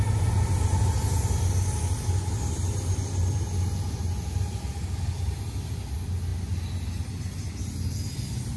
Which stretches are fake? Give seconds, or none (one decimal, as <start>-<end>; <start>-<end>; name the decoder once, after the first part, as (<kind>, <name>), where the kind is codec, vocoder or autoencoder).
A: none